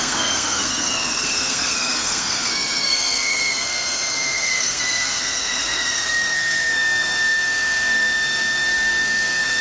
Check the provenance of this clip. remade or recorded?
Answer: remade